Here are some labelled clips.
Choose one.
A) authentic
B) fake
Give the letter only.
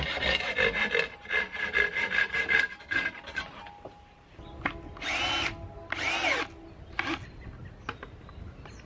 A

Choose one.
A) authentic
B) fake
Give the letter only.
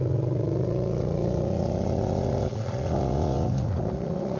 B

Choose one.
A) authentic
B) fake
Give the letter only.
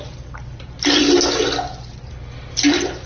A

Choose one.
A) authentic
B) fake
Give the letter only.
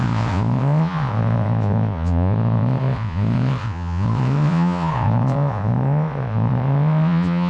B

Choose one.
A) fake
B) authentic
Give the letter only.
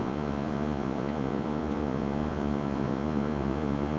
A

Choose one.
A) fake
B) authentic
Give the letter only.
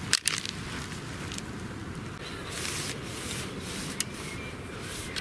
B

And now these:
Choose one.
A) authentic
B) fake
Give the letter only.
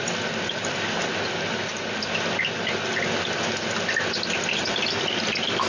A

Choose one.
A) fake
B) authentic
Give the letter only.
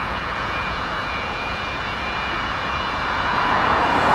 A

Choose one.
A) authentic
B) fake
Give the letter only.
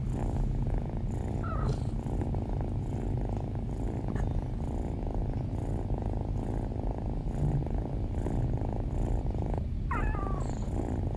A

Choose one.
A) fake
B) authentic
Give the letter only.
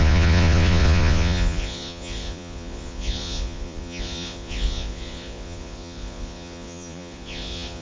A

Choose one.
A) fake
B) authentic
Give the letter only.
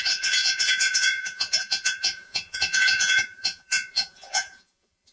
A